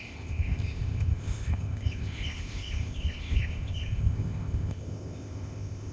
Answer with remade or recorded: remade